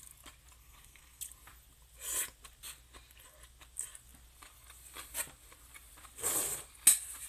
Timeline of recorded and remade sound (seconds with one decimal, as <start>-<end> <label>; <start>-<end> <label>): 0.0-0.6 recorded; 0.6-1.2 remade; 1.2-7.3 recorded